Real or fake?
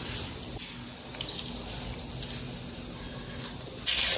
real